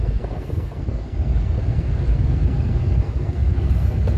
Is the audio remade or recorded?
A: remade